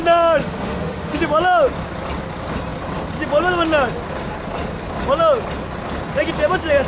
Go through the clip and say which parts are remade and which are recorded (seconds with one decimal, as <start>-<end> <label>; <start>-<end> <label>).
0.0-0.4 recorded; 0.4-1.2 remade; 1.2-6.9 recorded